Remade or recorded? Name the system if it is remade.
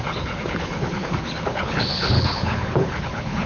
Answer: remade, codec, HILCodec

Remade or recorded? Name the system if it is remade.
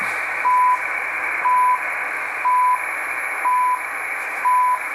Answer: recorded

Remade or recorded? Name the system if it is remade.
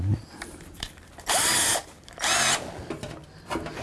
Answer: recorded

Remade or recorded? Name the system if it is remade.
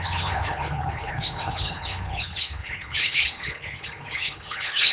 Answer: remade, codec, HILCodec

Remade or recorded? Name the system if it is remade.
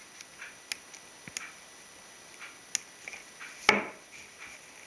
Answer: recorded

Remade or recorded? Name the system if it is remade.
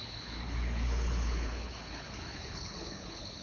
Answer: remade, codec, HILCodec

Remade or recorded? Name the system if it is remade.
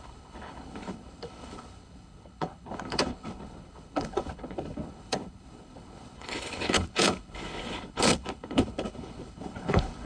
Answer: remade, codec, HILCodec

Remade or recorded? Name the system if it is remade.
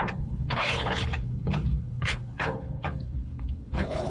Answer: remade, codec, HILCodec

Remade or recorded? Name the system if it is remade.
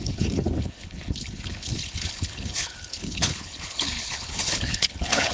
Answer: remade, codec, HILCodec